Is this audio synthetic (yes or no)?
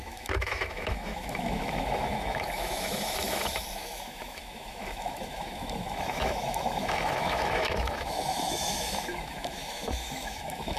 yes